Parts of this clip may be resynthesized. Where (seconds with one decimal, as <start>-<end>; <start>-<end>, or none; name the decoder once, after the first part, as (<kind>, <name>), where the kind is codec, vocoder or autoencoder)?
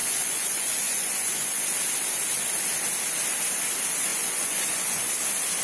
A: 0.0-1.6 (vocoder, Vocos); 4.1-5.1